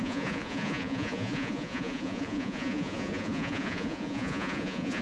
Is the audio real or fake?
fake